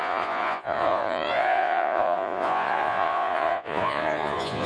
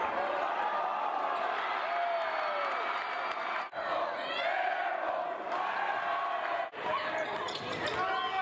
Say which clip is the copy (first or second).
first